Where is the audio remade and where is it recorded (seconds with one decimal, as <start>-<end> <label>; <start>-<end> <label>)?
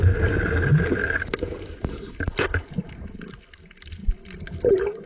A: 0.0-4.0 recorded; 4.0-5.1 remade